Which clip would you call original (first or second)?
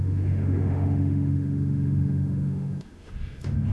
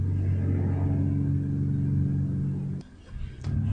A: second